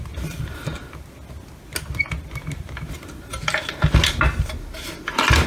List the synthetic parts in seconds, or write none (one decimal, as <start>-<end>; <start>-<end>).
none